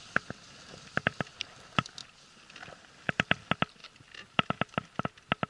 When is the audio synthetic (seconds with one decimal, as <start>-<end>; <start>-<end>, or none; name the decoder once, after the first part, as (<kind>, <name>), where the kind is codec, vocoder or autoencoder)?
2.0-3.0 (vocoder, BigVGAN v2)